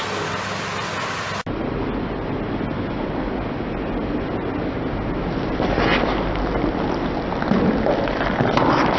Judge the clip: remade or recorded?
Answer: recorded